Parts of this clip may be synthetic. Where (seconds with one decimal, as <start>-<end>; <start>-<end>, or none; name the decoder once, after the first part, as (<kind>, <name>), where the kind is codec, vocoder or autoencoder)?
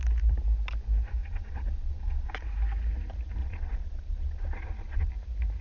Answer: 1.2-2.3 (vocoder, Vocos); 3.4-5.1